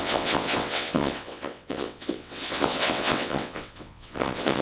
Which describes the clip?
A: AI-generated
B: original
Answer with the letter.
A